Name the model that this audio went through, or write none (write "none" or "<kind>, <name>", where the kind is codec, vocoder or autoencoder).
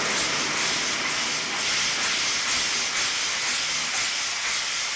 none